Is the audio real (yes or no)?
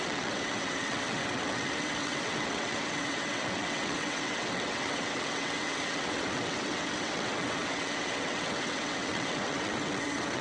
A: no